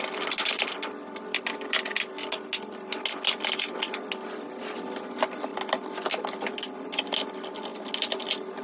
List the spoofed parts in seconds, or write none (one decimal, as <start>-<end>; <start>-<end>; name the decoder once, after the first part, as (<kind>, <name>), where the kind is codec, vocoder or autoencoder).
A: none